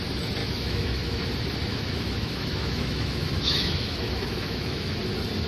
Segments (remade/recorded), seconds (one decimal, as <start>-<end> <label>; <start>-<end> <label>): 0.0-0.4 recorded; 0.4-1.2 remade; 1.2-1.7 recorded; 1.7-5.0 remade; 5.0-5.5 recorded